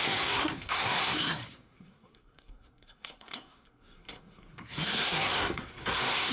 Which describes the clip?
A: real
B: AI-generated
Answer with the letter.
B